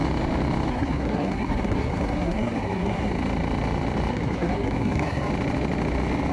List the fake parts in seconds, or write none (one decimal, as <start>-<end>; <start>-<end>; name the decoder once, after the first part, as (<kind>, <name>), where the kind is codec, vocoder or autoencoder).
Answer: 0.7-3.1 (codec, SNAC); 4.1-5.3